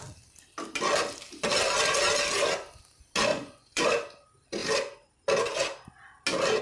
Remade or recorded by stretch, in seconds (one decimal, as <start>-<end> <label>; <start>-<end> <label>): 0.0-3.3 recorded; 3.3-3.8 remade; 3.8-6.6 recorded